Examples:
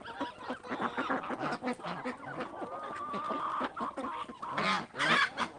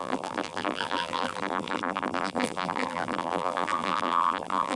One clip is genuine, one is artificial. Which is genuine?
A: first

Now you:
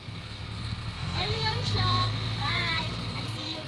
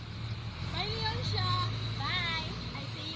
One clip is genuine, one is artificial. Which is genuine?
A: second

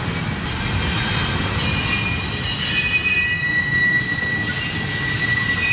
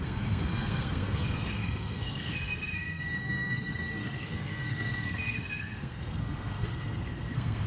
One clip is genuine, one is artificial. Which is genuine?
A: first